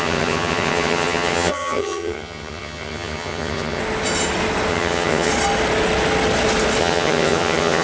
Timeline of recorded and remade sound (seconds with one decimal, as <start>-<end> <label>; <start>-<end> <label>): 0.0-3.8 remade; 3.8-4.7 recorded; 4.7-5.3 remade; 5.3-6.8 recorded; 6.8-7.8 remade